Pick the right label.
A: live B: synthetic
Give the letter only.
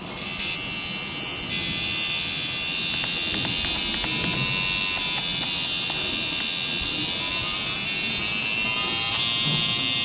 A